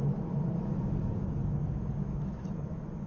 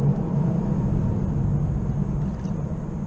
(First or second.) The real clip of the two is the second